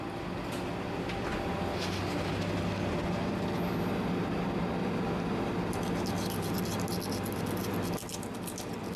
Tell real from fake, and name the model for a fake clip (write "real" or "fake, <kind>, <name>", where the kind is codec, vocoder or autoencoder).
real